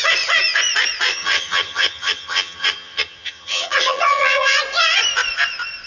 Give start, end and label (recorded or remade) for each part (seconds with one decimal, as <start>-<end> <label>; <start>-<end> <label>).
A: 0.0-1.1 recorded; 1.1-4.6 remade; 4.6-5.9 recorded